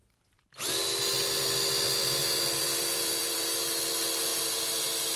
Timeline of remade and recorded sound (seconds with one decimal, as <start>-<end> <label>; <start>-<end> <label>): 0.0-2.2 recorded; 2.2-3.8 remade; 3.8-5.2 recorded